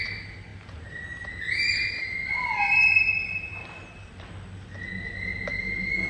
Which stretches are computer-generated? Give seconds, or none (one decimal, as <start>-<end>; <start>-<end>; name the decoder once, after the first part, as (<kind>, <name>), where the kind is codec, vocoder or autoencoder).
none